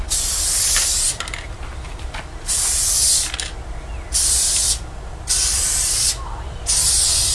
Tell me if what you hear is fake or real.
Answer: real